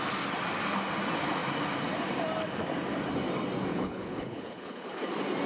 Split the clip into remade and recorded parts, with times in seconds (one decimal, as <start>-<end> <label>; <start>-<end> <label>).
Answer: 0.0-3.7 recorded; 3.7-5.1 remade; 5.1-5.5 recorded